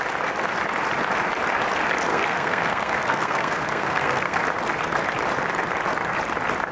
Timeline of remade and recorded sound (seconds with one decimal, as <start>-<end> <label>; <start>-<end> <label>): 0.0-2.1 recorded; 2.1-4.4 remade; 4.4-6.7 recorded

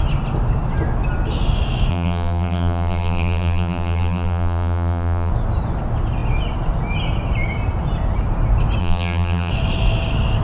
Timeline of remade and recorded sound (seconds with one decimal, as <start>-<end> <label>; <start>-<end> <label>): 0.0-1.9 recorded; 1.9-5.3 remade; 5.3-8.8 recorded; 8.8-9.5 remade; 9.5-10.4 recorded

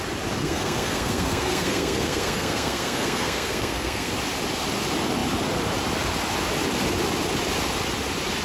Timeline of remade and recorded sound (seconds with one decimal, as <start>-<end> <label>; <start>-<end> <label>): 0.0-0.4 recorded; 0.4-4.1 remade; 4.1-8.4 recorded

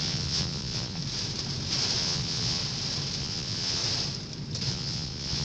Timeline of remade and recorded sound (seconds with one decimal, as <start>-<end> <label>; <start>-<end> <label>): 0.0-1.0 remade; 1.0-2.0 recorded; 2.0-2.6 remade; 2.6-3.2 recorded; 3.2-3.8 remade; 3.8-4.7 recorded; 4.7-5.4 remade

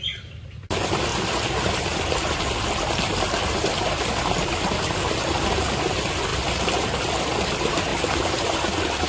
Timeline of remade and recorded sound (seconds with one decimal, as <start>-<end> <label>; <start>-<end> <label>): 0.0-9.1 recorded

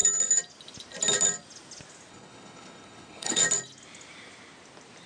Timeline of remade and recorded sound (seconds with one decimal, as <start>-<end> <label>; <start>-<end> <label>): 0.0-2.1 recorded; 2.1-3.4 remade; 3.4-5.1 recorded

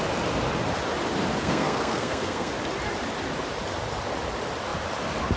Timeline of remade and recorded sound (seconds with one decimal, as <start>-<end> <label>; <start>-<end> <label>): 0.0-1.4 recorded; 1.4-2.5 remade; 2.5-5.4 recorded

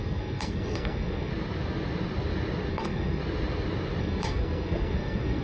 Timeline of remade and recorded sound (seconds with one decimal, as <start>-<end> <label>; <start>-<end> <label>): 0.0-1.3 remade; 1.3-2.7 recorded; 2.7-3.2 remade; 3.2-4.0 recorded; 4.0-5.4 remade